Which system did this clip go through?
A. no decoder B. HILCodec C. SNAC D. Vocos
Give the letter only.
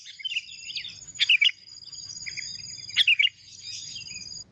A